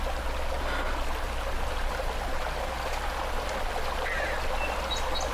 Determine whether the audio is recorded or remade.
recorded